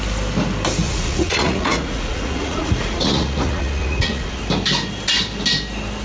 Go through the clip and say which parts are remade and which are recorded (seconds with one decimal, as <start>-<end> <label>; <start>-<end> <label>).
0.0-0.8 recorded; 0.8-4.4 remade; 4.4-6.0 recorded